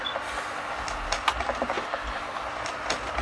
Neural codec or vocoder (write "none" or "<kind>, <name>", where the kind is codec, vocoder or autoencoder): none